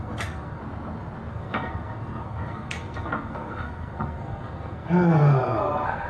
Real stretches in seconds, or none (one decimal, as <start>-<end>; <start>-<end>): 0.6-1.3